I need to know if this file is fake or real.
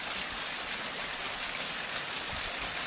real